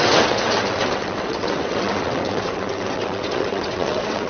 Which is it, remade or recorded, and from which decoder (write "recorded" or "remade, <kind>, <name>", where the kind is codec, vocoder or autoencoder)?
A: remade, vocoder, WaveNeXt